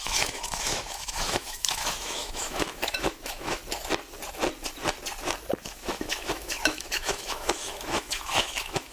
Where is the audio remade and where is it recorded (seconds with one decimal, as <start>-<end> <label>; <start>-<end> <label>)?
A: 0.0-3.6 remade; 3.6-5.6 recorded; 5.6-8.9 remade